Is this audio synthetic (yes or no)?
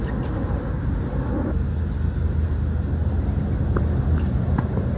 no